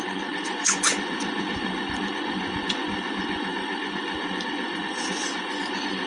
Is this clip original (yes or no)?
no